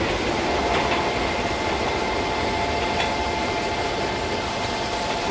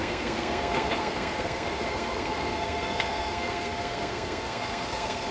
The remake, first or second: second